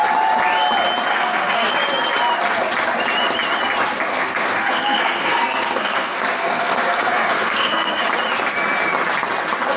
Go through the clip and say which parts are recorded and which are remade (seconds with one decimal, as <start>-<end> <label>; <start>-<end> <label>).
0.0-1.1 recorded; 1.1-1.7 remade; 1.7-4.1 recorded; 4.1-8.0 remade; 8.0-9.8 recorded